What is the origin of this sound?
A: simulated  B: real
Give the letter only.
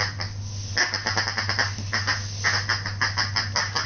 B